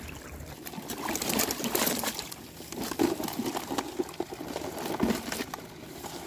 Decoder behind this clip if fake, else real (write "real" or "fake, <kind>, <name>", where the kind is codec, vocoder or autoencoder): real